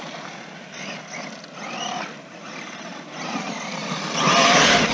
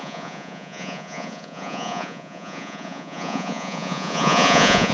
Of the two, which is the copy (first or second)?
second